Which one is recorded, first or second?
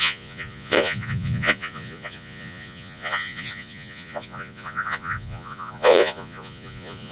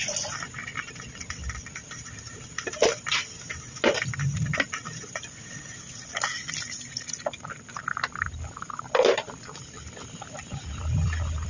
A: second